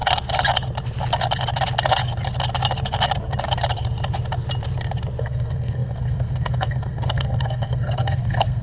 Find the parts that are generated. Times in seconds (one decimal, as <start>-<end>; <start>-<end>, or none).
5.2-8.6